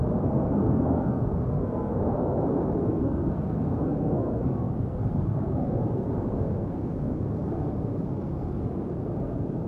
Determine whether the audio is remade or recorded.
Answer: remade